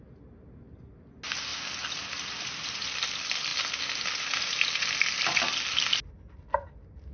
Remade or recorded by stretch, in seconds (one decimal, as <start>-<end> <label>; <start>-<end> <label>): 0.0-7.1 recorded